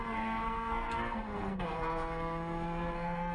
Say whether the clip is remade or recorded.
remade